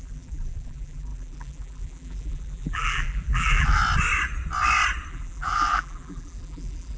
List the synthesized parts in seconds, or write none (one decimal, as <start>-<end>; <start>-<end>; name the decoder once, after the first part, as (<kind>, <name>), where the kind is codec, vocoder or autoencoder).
0.0-3.8 (vocoder, BigVGAN v2); 5.1-7.0